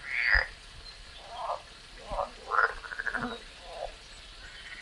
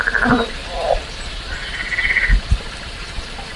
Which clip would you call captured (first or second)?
first